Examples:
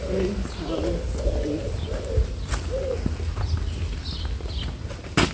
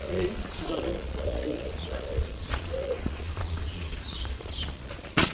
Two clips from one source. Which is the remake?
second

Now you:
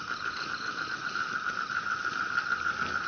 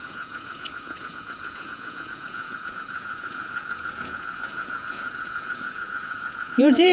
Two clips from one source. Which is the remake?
second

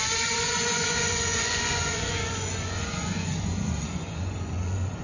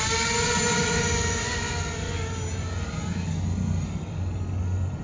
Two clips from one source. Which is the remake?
first